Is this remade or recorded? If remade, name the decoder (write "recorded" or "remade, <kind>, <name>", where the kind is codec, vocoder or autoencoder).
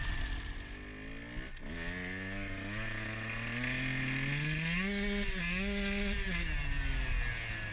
recorded